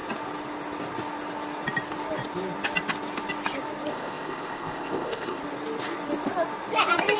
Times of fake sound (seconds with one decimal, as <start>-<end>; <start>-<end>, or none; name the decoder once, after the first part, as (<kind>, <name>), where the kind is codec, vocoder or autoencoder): 3.9-5.4 (codec, ZipCodec)